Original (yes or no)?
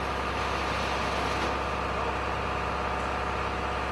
yes